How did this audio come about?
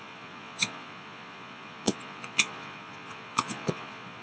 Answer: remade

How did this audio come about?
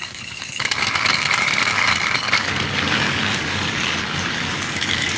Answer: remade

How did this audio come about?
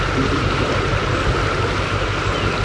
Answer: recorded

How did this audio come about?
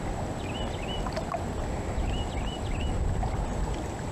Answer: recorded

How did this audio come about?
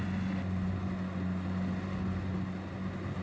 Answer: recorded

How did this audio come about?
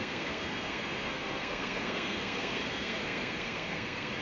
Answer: remade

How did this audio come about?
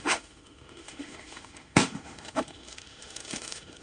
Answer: remade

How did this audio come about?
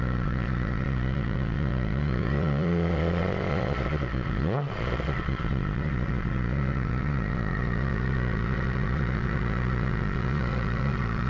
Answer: remade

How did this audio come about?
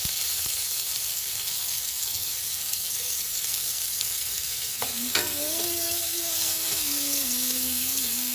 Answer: remade